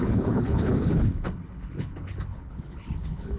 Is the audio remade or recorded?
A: remade